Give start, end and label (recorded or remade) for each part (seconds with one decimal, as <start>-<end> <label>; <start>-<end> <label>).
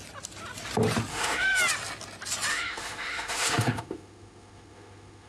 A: 0.0-1.1 recorded; 1.1-1.6 remade; 1.6-2.5 recorded; 2.5-5.3 remade